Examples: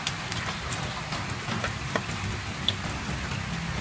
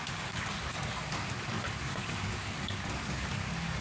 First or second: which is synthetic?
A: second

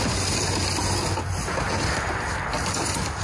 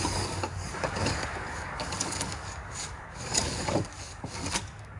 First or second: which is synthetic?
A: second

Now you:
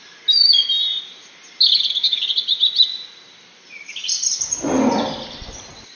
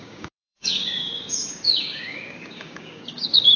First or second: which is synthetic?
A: second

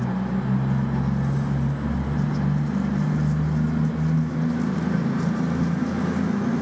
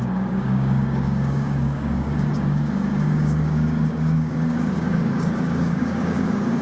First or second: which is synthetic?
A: second